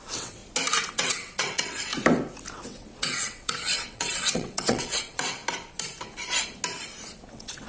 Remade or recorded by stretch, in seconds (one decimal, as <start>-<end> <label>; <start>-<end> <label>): 0.0-0.4 remade; 0.4-0.9 recorded; 0.9-1.9 remade; 1.9-2.5 recorded; 2.5-5.4 remade; 5.4-7.3 recorded; 7.3-7.7 remade